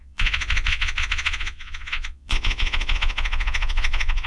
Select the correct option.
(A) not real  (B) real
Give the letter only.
A